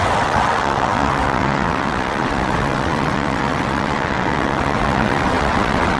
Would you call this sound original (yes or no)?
no